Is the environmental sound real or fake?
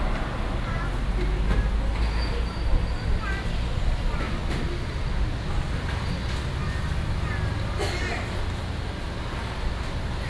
real